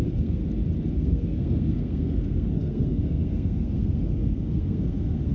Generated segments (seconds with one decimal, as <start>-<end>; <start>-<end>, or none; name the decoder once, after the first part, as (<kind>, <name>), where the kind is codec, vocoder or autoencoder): 0.0-0.4 (codec, SNAC); 0.9-5.3